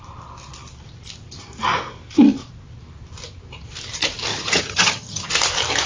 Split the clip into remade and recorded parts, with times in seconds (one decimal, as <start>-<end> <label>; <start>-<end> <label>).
0.0-4.3 recorded; 4.3-5.3 remade; 5.3-5.9 recorded